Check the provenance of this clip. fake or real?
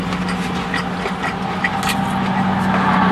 real